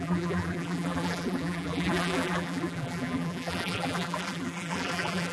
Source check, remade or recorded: remade